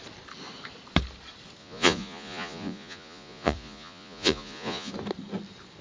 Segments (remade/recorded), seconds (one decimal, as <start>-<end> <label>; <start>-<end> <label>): 0.0-1.6 recorded; 1.6-4.9 remade; 4.9-5.8 recorded